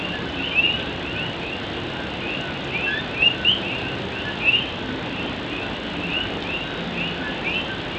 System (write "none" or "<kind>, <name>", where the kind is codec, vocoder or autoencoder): none